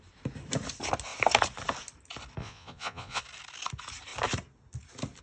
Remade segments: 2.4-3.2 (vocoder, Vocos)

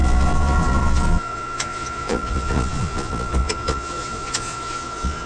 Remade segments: 0.0-5.3 (vocoder, Vocos)

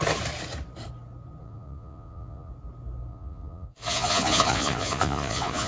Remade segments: 1.4-2.5 (vocoder, Vocos); 3.1-5.7